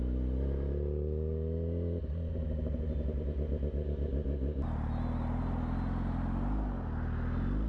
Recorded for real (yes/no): yes